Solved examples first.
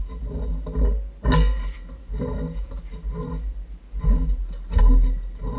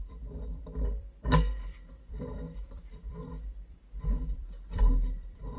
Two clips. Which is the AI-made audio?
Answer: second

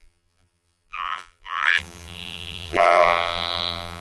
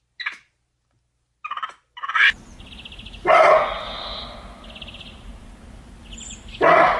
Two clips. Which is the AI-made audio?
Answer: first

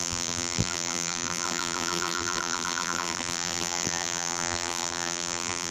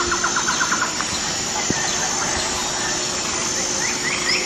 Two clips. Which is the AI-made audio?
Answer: first